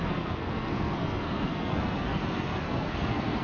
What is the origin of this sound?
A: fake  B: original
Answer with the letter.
A